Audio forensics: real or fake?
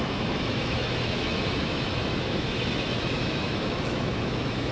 fake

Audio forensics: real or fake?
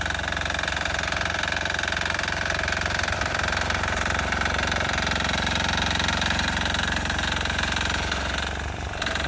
real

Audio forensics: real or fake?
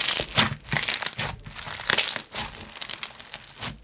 real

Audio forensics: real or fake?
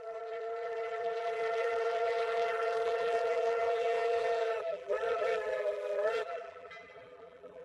fake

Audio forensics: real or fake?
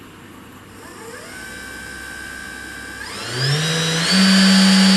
real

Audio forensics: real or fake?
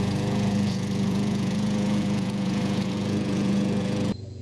fake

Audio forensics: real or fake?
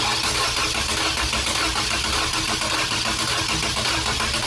real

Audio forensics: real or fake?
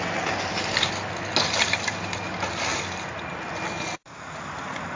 real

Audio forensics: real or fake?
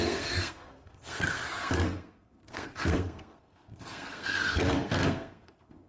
fake